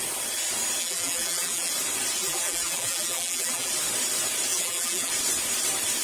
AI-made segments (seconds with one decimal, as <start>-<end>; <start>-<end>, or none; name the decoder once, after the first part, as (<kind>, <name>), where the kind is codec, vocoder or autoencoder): 0.8-1.7 (vocoder, BigVGAN v2); 2.2-3.7; 4.5-5.1